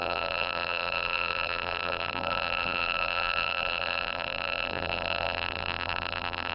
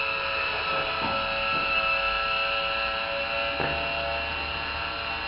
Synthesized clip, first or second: first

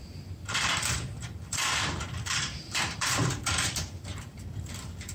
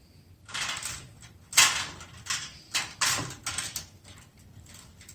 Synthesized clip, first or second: first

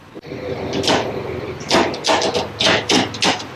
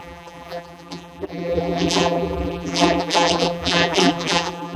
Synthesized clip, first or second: second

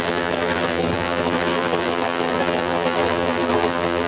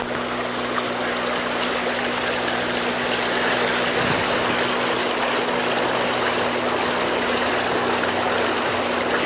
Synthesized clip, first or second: first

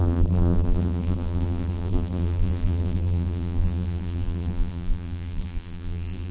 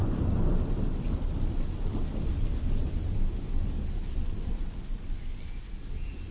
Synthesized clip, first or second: first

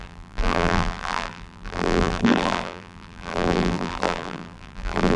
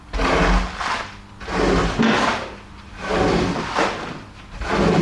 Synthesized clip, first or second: first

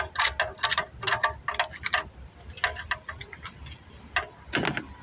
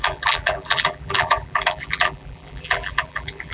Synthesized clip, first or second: second